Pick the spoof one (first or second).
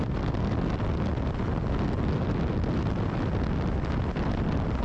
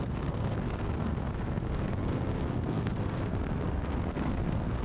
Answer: second